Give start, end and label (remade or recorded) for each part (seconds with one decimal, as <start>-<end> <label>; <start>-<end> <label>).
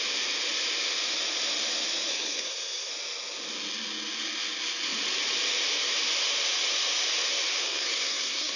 0.0-2.1 recorded; 2.1-2.9 remade; 2.9-7.6 recorded; 7.6-8.6 remade